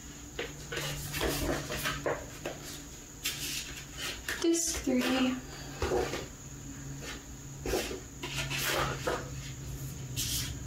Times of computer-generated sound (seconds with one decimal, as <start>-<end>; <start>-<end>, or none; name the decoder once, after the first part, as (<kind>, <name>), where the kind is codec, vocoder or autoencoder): none